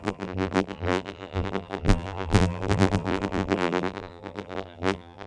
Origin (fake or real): fake